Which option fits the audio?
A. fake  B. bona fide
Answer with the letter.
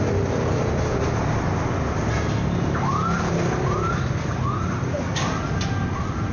B